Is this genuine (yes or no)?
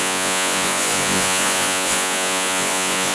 no